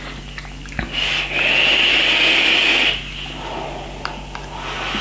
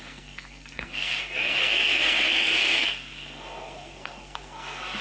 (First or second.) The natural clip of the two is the first